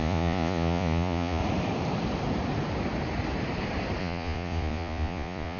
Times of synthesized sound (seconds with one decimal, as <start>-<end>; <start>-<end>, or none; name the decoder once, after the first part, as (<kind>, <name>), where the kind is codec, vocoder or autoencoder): 0.0-1.4 (vocoder, Vocos); 4.0-5.6